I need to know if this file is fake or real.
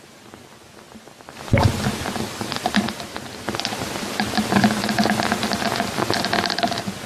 real